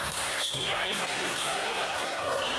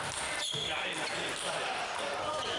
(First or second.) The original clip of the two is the second